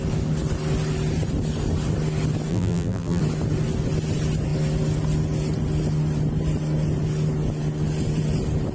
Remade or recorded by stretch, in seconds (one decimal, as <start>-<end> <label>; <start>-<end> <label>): 0.0-2.5 recorded; 2.5-3.2 remade; 3.2-8.7 recorded